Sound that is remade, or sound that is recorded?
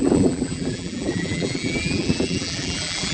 remade